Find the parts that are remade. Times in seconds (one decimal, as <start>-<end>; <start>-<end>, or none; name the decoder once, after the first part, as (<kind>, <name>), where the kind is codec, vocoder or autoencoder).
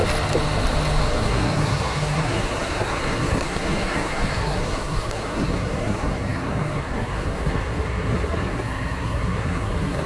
1.1-10.1 (codec, SNAC)